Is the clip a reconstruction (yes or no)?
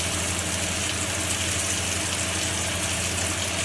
no